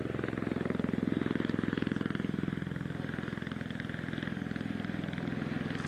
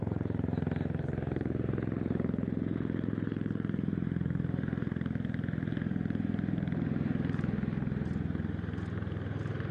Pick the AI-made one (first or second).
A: second